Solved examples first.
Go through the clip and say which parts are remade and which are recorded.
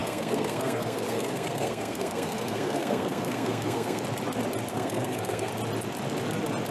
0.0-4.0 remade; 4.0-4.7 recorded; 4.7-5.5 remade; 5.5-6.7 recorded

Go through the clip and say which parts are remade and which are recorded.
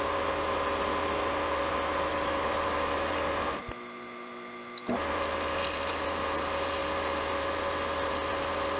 0.0-2.1 recorded; 2.1-3.1 remade; 3.1-8.8 recorded